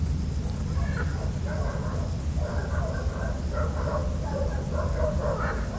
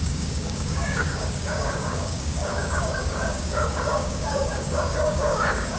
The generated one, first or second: second